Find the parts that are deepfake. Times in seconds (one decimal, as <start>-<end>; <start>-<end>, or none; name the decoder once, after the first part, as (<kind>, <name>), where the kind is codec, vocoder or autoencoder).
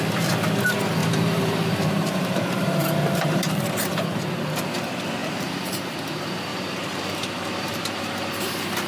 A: 1.0-4.2 (vocoder, BigVGAN v2); 5.2-5.9; 6.5-8.0